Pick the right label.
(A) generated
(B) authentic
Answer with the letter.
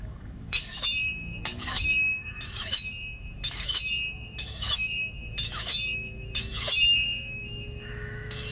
A